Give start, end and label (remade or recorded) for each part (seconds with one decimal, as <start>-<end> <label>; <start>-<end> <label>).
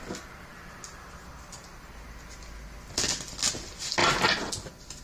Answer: 0.0-5.0 recorded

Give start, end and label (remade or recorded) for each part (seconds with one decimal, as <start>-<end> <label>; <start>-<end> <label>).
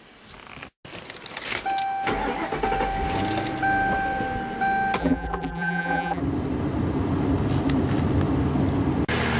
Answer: 0.0-5.0 recorded; 5.0-6.2 remade; 6.2-9.4 recorded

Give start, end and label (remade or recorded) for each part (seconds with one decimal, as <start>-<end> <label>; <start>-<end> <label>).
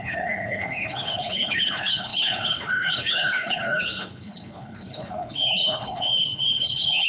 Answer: 0.0-7.1 remade